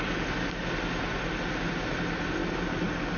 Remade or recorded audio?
recorded